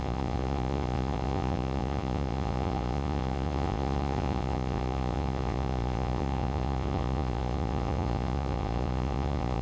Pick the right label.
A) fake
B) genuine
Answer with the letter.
A